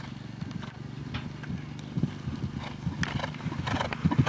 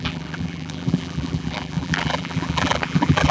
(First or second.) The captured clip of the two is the first